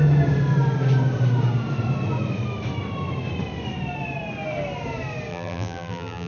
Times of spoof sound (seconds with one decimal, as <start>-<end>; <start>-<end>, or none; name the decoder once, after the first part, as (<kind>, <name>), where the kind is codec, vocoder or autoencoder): 5.3-6.3 (vocoder, BigVGAN v2)